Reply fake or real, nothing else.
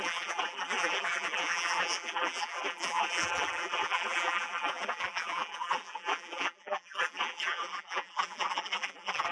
fake